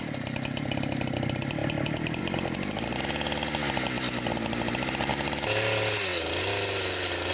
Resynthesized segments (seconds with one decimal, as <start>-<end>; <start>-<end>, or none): none